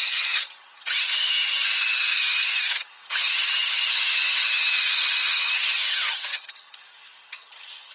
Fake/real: fake